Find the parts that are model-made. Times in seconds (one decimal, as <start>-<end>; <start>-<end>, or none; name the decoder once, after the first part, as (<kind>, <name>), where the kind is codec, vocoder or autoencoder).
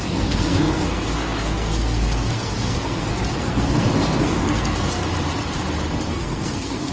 0.0-5.0 (codec, SNAC); 6.1-6.9